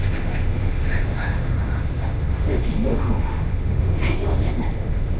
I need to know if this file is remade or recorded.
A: remade